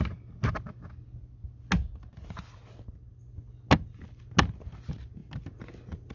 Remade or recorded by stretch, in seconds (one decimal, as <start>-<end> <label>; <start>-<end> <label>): 0.0-6.1 recorded